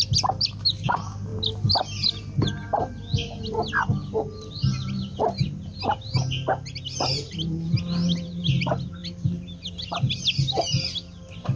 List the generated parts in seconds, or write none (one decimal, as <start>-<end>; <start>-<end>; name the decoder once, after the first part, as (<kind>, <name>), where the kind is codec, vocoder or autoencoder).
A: 9.0-10.4 (vocoder, BigVGAN v2)